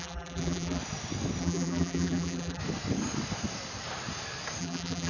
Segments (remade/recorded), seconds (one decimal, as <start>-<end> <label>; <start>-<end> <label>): 0.0-0.8 remade; 0.8-1.4 recorded; 1.4-2.6 remade; 2.6-4.6 recorded; 4.6-5.1 remade